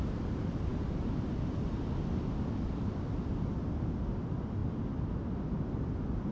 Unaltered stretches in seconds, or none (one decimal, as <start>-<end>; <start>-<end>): 0.0-6.3